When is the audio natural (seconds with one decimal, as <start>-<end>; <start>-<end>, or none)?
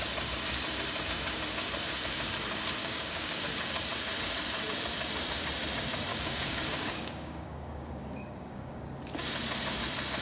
0.0-2.8; 3.4-6.1; 8.8-10.2